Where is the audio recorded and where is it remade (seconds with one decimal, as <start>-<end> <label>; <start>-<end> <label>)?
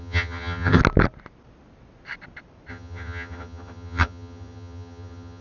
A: 0.0-0.8 remade; 0.8-2.7 recorded; 2.7-5.4 remade